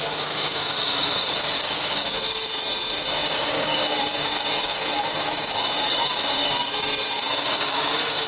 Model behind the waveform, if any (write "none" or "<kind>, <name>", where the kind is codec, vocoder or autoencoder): codec, DAC